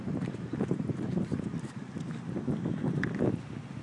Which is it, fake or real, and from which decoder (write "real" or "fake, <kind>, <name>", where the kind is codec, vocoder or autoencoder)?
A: real